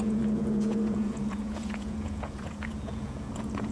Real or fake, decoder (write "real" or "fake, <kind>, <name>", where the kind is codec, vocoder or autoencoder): fake, vocoder, Vocos